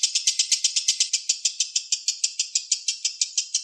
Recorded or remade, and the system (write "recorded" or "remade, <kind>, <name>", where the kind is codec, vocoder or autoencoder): recorded